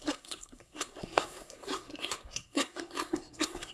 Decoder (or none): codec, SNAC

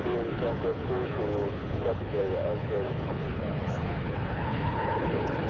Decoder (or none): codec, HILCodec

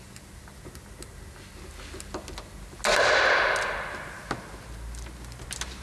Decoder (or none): none